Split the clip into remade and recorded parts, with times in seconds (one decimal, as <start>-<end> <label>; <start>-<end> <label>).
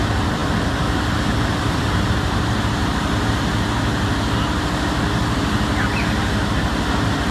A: 0.0-0.4 remade; 0.4-1.4 recorded; 1.4-1.8 remade; 1.8-6.2 recorded; 6.2-7.3 remade